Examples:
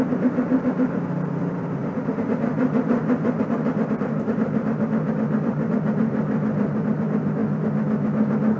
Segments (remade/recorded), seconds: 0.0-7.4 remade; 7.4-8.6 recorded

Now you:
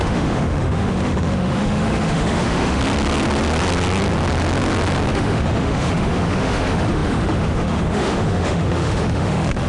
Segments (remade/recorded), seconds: 0.0-2.8 remade; 2.8-5.1 recorded; 5.1-9.7 remade